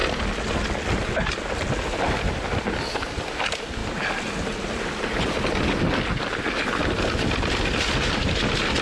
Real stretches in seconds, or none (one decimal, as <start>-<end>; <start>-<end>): 0.0-8.8